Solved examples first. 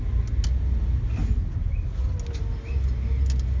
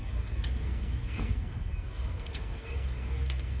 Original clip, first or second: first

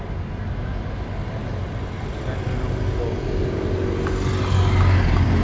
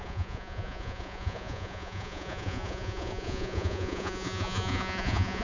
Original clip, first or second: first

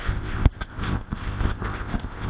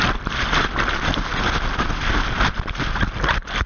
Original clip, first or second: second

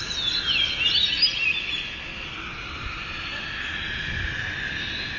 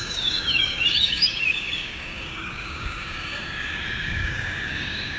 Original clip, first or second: first